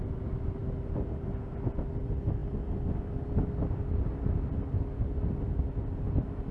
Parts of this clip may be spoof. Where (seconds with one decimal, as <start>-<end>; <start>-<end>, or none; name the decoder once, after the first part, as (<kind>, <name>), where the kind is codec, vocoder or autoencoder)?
none